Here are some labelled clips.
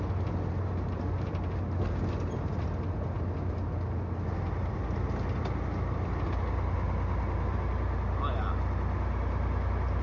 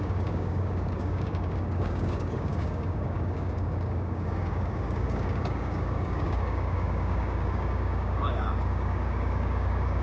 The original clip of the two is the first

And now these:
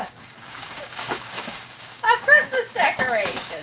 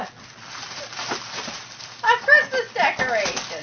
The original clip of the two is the second